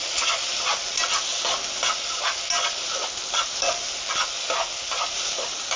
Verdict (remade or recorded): recorded